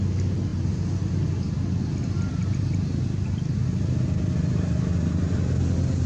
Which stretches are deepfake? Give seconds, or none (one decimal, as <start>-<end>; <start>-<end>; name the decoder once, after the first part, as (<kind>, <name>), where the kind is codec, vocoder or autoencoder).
none